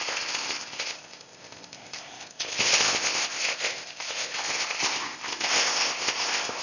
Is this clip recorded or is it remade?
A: remade